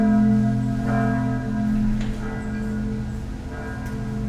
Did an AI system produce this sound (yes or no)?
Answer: no